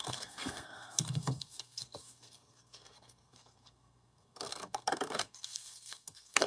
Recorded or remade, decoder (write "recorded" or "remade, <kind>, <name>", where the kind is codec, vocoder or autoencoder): remade, codec, SNAC